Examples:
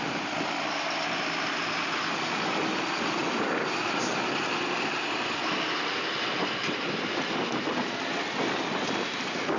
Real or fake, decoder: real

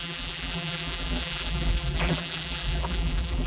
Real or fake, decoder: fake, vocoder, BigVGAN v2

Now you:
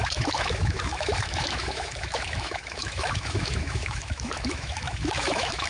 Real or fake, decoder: fake, autoencoder, DAC-VAE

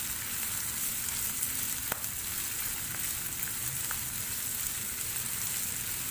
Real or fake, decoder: fake, vocoder, BigVGAN v2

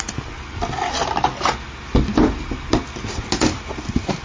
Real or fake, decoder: real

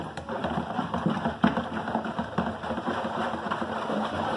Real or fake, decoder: real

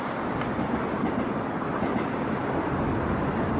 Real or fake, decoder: real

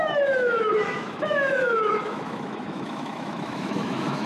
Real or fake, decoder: fake, autoencoder, DAC-VAE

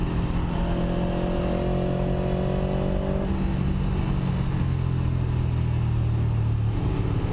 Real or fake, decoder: real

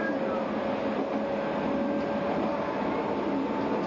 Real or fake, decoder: real